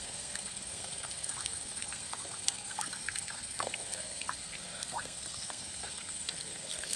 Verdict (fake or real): fake